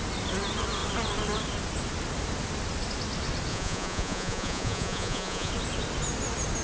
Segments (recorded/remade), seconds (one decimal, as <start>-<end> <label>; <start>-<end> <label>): 0.0-3.5 recorded; 3.5-5.5 remade; 5.5-6.6 recorded